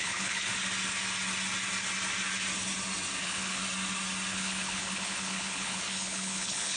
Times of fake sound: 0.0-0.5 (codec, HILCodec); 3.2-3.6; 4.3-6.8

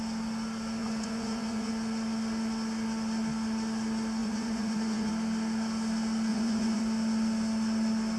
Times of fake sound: 0.8-1.7 (vocoder, Vocos); 4.2-5.1; 6.3-6.8

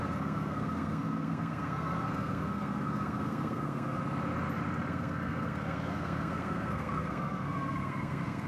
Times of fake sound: 0.0-4.0 (codec, SNAC); 4.9-8.5

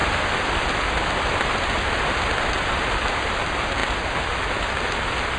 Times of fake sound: none

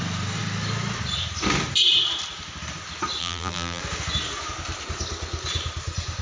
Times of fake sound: 3.2-3.8 (vocoder, BigVGAN v2)

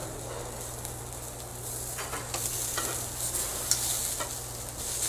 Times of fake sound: none